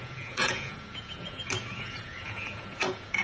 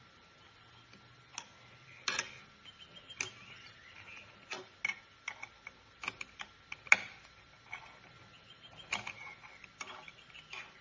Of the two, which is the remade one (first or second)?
first